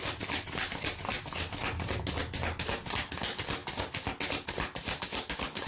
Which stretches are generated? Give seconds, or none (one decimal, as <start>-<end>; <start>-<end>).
none